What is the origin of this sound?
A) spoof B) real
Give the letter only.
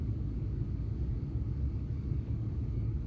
A